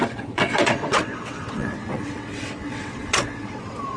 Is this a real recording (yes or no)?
no